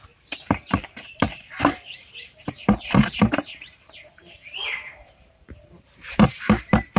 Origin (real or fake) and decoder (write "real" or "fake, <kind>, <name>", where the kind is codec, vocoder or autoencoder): fake, vocoder, BigVGAN v2